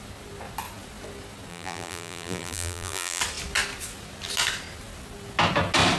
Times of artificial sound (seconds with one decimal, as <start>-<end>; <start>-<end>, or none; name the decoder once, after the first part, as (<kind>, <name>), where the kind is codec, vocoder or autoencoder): 1.5-3.2 (vocoder, BigVGAN v2)